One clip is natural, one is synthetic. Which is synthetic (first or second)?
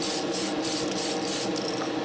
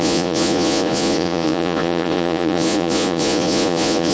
second